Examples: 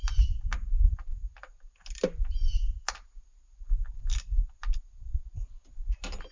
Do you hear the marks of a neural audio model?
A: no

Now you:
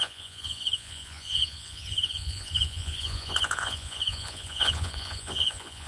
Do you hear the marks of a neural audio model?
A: yes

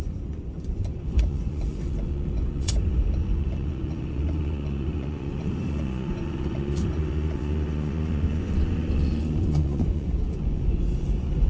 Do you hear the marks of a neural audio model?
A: yes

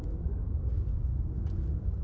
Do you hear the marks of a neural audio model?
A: no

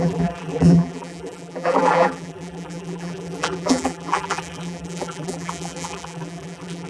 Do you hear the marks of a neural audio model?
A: yes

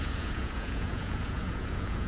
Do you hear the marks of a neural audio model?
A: yes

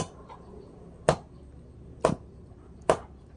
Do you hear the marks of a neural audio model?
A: no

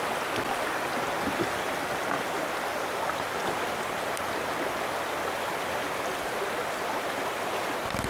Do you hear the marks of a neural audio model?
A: no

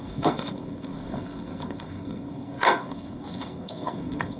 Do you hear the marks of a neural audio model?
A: yes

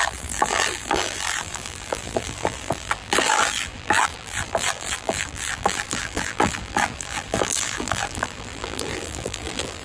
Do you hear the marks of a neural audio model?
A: yes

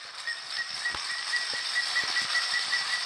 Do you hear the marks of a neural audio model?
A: no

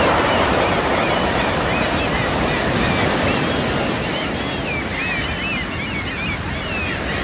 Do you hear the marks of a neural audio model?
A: no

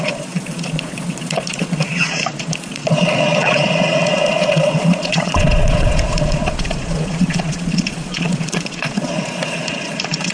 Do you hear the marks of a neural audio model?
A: yes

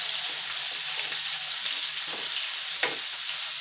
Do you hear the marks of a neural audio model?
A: no